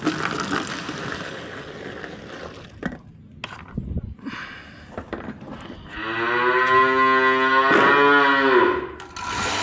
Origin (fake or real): real